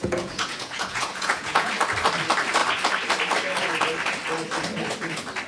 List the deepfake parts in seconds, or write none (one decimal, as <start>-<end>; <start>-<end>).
0.0-1.7